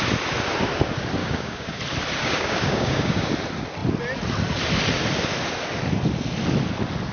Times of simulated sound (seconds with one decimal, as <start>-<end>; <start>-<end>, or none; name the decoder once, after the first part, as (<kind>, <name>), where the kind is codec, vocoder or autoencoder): 1.2-1.8 (codec, DAC); 2.2-3.3